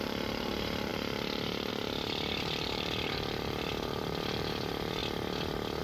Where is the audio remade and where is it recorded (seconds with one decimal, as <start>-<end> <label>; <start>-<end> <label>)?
0.0-5.0 remade; 5.0-5.8 recorded